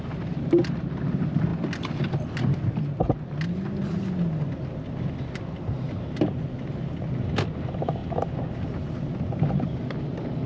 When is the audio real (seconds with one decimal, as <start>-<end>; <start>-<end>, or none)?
0.0-10.5